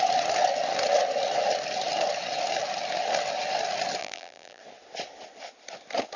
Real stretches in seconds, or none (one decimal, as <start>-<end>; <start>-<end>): 0.0-4.0; 4.6-6.2